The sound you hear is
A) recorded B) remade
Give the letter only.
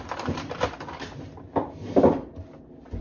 A